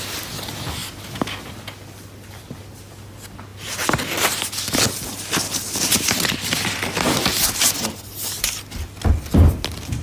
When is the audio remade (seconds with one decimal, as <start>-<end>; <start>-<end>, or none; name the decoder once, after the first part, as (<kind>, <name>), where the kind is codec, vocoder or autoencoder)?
none